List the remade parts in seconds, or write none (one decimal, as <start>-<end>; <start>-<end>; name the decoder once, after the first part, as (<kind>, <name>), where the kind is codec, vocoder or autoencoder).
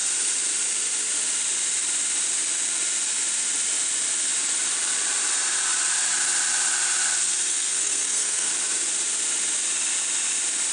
7.5-8.5 (codec, SNAC)